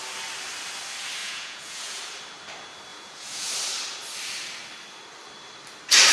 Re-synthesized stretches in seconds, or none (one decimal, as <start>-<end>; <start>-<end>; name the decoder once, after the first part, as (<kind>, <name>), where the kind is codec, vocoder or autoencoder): 1.2-2.0 (vocoder, Vocos); 2.9-3.5